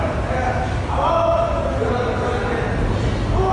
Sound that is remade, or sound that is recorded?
recorded